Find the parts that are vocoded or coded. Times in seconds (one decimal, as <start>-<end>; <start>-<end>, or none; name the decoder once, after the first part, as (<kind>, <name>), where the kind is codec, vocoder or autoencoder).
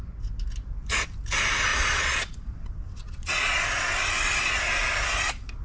1.7-2.5 (vocoder, Vocos); 3.0-3.6